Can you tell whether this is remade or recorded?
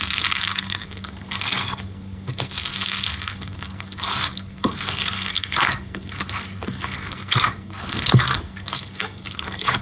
remade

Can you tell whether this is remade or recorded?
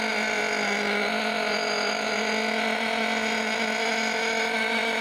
recorded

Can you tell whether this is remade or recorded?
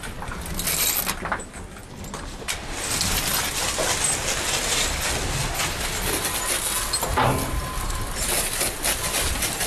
recorded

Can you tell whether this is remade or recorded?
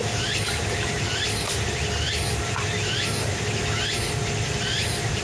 recorded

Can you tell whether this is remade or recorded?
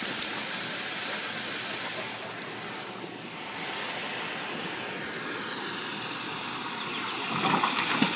recorded